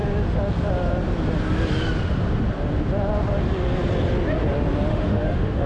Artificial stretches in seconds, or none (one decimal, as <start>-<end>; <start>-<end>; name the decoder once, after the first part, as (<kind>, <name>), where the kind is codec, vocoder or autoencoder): 4.9-5.7 (autoencoder, DAC-VAE)